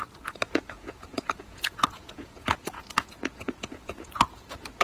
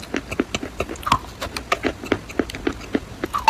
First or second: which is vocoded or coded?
first